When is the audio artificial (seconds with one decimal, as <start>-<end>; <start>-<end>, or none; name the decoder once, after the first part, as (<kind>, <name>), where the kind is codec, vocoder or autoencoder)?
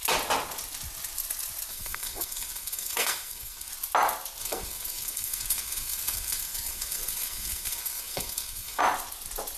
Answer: 1.7-3.7 (codec, SNAC); 4.4-8.8